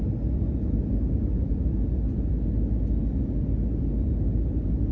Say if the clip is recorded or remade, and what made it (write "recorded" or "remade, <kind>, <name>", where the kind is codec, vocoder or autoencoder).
recorded